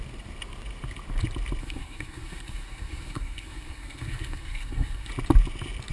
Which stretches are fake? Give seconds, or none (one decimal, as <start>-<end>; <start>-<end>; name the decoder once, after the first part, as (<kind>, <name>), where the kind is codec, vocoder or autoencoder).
1.6-5.1 (codec, SNAC)